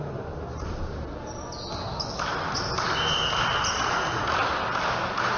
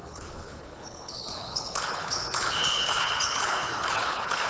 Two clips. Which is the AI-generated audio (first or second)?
second